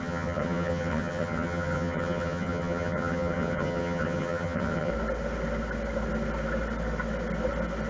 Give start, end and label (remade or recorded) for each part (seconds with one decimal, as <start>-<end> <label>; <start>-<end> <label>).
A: 0.0-4.9 remade; 4.9-7.9 recorded